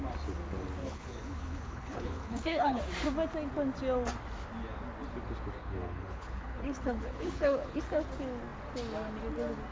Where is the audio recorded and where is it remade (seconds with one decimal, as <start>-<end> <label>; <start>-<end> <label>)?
0.0-0.8 recorded; 0.8-2.8 remade; 2.8-5.6 recorded; 5.6-7.8 remade; 7.8-9.7 recorded